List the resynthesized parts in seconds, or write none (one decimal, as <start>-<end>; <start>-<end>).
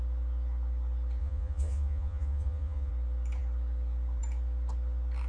1.2-2.9